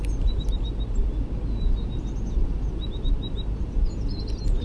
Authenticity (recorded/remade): recorded